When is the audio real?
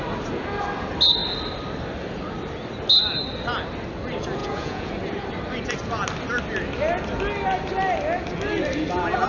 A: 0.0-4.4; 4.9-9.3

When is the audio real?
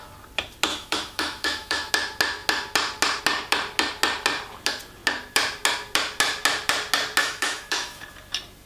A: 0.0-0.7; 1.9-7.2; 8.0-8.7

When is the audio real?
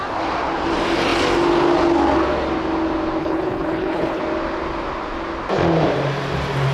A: 0.0-3.2; 4.2-6.7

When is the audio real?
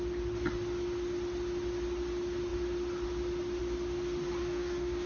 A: 0.0-4.4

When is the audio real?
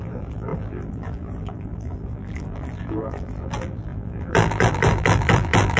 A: none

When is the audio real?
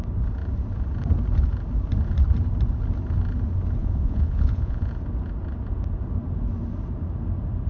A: 0.0-3.8; 4.9-7.7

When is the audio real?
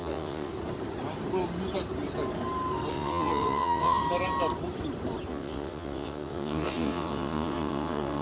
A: 0.5-2.9; 4.0-5.3